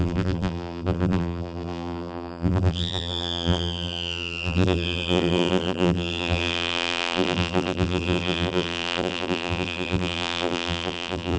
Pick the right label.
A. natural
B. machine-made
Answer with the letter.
B